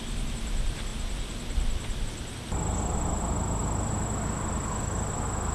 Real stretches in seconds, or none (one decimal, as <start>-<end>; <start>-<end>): 0.0-5.5